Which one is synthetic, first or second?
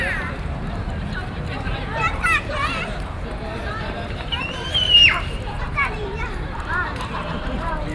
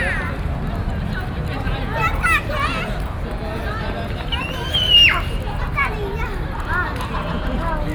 first